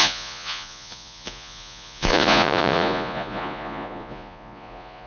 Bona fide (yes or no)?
no